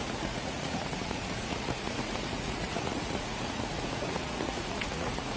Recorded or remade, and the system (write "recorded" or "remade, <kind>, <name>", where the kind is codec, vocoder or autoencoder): remade, vocoder, Vocos